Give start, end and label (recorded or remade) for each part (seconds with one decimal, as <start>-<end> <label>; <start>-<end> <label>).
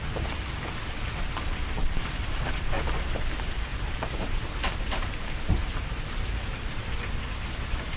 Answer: 0.0-8.0 remade